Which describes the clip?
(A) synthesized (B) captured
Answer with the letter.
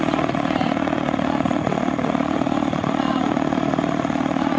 A